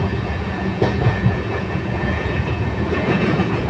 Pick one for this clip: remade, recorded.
remade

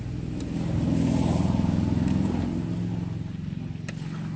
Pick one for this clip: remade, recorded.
recorded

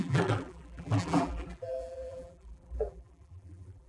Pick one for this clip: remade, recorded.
remade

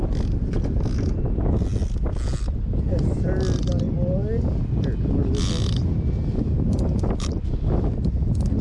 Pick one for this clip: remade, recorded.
recorded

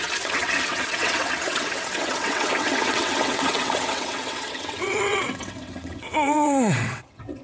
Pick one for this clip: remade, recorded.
remade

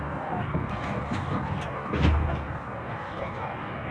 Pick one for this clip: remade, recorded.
remade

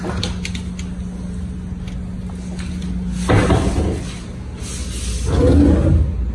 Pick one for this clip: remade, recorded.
recorded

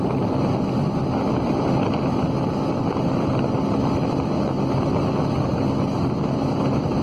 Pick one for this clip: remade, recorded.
recorded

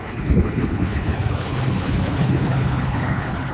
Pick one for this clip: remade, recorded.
remade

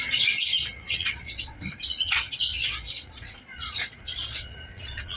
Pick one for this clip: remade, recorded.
remade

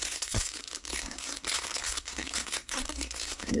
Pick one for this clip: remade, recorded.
remade